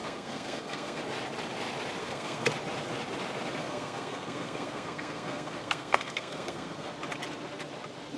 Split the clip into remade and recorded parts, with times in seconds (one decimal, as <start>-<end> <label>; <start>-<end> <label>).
0.0-1.0 remade; 1.0-2.0 recorded; 2.0-2.5 remade; 2.5-3.6 recorded; 3.6-6.9 remade; 6.9-8.2 recorded